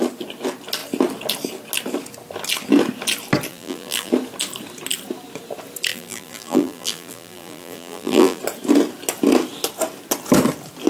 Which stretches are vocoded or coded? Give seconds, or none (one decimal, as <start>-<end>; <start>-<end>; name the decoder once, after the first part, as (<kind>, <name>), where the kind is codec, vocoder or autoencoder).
3.5-4.1 (vocoder, BigVGAN v2); 5.9-8.4